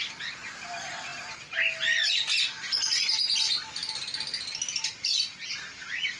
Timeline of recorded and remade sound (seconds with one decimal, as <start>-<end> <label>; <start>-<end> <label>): 0.0-3.8 remade; 3.8-5.6 recorded; 5.6-6.2 remade